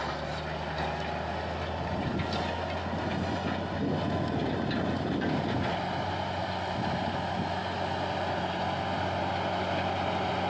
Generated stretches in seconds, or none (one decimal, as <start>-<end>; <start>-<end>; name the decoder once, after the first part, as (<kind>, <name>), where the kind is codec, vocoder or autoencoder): none